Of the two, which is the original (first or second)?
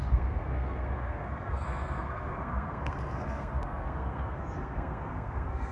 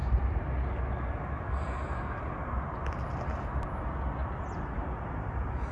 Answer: second